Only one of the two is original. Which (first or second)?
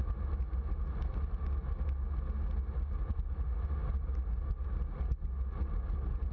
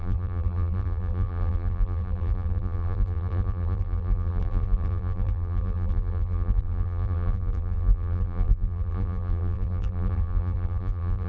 first